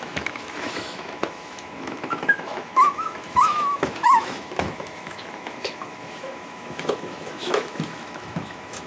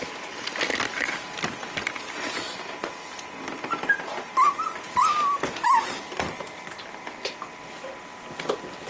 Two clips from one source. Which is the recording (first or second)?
second